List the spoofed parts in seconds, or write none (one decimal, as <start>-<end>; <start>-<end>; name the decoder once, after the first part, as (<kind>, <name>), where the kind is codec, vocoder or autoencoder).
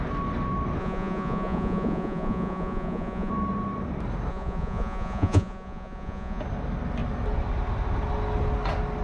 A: 0.8-3.3 (vocoder, Vocos); 4.3-6.4